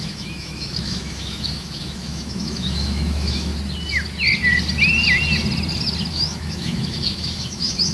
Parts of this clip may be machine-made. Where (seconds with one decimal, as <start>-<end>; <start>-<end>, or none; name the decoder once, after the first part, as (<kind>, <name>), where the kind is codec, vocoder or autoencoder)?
0.0-3.5 (autoencoder, DAC-VAE); 6.1-7.9